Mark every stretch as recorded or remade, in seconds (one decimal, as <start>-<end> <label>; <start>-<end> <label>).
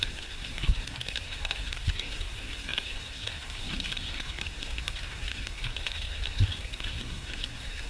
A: 0.0-7.9 remade